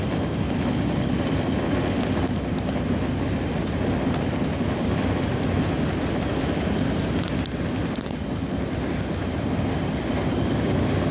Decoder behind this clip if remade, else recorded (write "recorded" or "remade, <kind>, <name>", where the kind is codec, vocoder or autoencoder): recorded